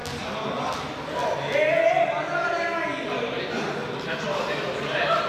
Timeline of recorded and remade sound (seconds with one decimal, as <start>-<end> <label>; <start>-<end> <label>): 0.0-3.2 recorded; 3.2-3.8 remade; 3.8-5.3 recorded